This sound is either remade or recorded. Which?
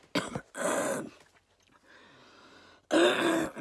recorded